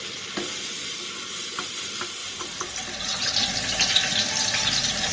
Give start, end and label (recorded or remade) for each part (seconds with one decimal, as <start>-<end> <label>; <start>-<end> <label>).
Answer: 0.0-5.1 recorded